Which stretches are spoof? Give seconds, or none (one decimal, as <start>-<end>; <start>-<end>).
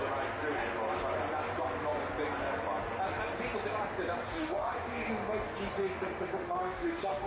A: 4.3-5.1; 5.8-7.3